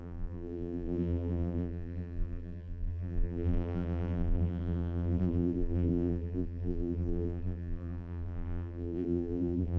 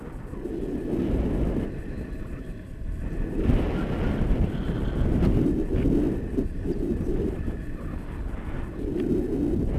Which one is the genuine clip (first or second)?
second